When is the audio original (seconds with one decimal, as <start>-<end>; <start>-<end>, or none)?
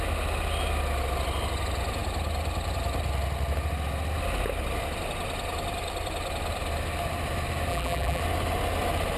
0.0-7.7; 8.2-9.2